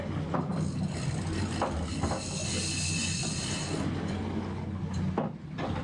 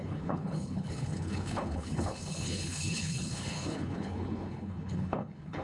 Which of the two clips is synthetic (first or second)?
second